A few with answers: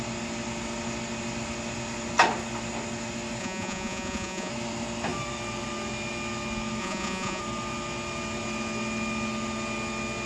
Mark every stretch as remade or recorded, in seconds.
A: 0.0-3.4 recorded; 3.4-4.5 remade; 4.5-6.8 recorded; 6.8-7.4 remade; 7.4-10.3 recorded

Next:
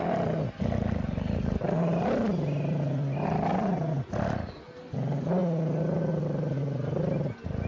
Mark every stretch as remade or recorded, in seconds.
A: 0.0-3.5 recorded; 3.5-4.0 remade; 4.0-7.7 recorded

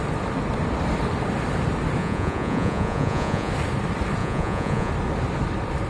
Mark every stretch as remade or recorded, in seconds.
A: 0.0-2.0 recorded; 2.0-3.5 remade; 3.5-4.2 recorded; 4.2-4.9 remade; 4.9-5.9 recorded

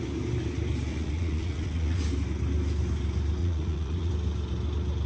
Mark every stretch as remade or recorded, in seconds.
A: 0.0-0.9 recorded; 0.9-2.0 remade; 2.0-3.4 recorded; 3.4-4.1 remade; 4.1-5.1 recorded

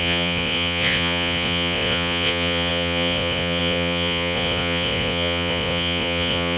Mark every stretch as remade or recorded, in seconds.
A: 0.0-6.6 remade

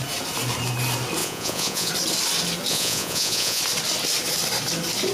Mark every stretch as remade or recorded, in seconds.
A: 0.0-1.2 recorded; 1.2-1.9 remade; 1.9-2.7 recorded; 2.7-3.6 remade; 3.6-5.1 recorded

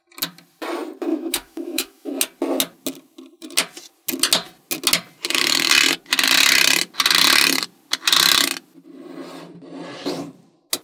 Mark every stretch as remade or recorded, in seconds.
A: 0.0-1.1 recorded; 1.1-2.1 remade; 2.1-10.8 recorded